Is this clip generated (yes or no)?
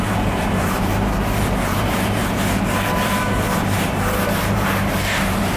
yes